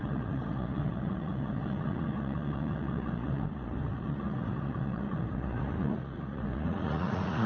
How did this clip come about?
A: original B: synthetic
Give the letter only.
B